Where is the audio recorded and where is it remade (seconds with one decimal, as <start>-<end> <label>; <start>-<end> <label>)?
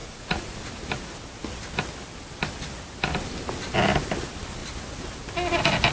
0.0-0.7 remade; 0.7-5.9 recorded